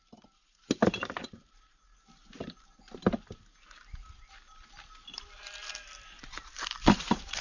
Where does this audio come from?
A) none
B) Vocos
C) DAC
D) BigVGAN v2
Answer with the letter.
A